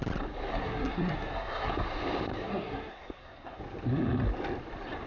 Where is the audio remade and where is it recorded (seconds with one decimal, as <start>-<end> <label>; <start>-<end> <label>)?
0.0-0.5 recorded; 0.5-1.7 remade; 1.7-2.3 recorded; 2.3-3.6 remade; 3.6-5.1 recorded